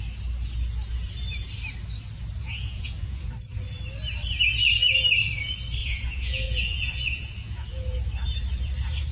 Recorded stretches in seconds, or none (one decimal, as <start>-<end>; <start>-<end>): 0.0-2.4; 3.3-5.8; 8.0-9.1